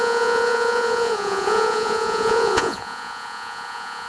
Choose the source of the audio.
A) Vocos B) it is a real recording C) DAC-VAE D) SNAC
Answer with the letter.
A